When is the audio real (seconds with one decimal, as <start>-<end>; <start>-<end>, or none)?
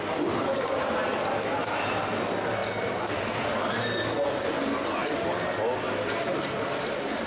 0.0-2.6; 3.2-7.3